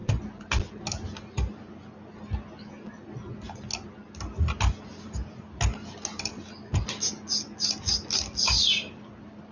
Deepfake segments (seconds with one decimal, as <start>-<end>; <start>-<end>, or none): none